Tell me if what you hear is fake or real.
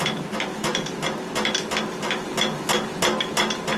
real